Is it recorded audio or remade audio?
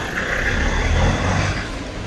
recorded